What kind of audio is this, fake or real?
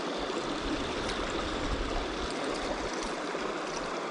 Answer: real